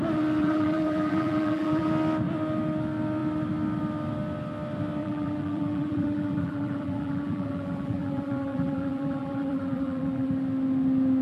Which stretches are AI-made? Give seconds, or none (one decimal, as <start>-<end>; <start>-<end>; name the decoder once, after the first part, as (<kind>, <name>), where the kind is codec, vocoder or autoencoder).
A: 0.4-1.9 (vocoder, BigVGAN v2); 5.0-10.3